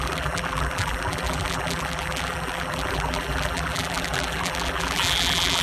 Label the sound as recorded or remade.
remade